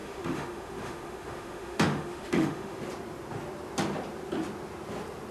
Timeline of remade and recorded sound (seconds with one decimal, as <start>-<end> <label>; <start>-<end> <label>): 0.0-2.8 remade; 2.8-5.3 recorded